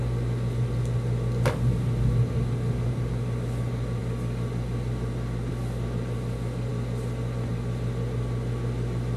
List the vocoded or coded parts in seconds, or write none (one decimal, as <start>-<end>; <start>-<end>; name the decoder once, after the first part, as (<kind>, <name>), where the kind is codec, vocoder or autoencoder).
none